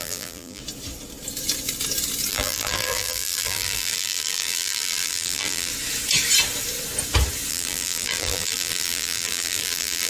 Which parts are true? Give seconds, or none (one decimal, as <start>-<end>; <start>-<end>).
0.6-2.3; 5.7-7.5